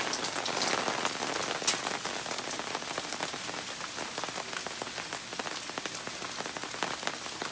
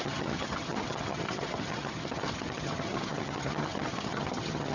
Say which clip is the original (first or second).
first